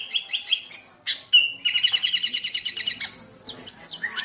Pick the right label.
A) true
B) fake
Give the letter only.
A